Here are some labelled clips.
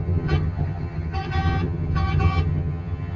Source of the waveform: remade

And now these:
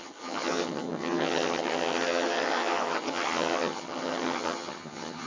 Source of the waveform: remade